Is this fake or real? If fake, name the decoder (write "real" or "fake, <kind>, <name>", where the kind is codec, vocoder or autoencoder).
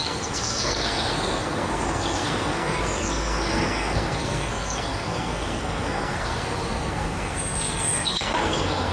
fake, codec, SNAC